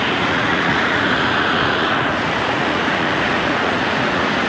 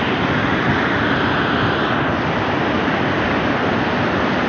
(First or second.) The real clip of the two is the second